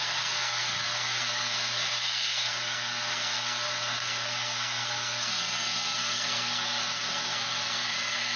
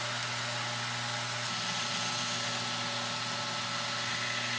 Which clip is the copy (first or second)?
first